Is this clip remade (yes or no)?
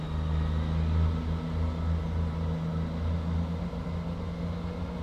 no